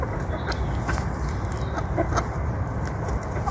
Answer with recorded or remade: recorded